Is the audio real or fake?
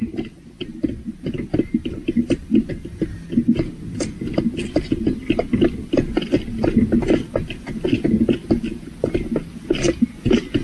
real